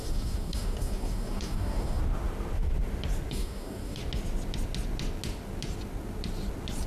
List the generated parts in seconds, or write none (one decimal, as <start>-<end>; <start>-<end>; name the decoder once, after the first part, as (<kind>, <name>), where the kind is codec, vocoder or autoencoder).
0.0-2.0 (codec, DAC); 3.3-4.0